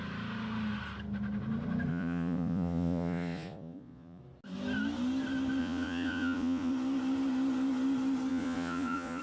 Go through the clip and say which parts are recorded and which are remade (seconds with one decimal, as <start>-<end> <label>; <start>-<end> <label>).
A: 0.0-1.9 recorded; 1.9-4.2 remade; 4.2-5.6 recorded; 5.6-6.7 remade; 6.7-8.3 recorded; 8.3-9.2 remade